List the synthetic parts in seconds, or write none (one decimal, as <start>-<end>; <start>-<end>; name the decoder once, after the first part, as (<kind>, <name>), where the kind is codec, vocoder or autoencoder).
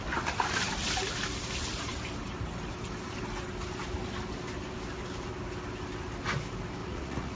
6.8-7.4 (vocoder, Vocos)